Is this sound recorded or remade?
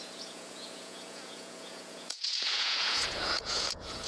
remade